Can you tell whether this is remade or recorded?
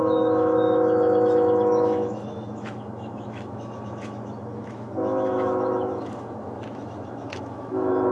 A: remade